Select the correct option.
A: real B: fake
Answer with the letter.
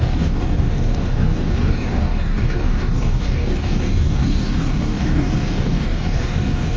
B